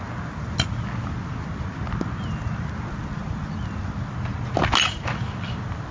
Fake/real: real